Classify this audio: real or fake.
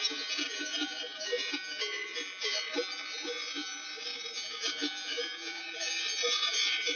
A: fake